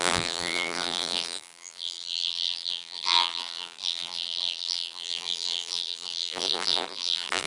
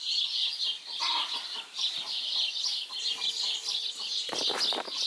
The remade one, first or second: first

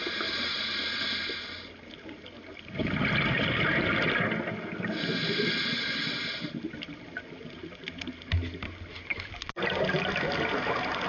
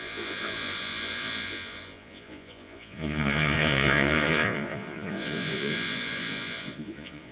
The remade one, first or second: second